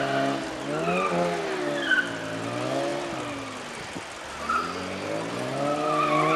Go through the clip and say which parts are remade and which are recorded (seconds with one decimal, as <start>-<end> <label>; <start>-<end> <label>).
0.0-6.4 recorded